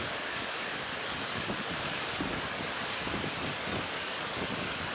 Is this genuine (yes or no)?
no